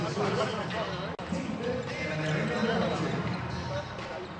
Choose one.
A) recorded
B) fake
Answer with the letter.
A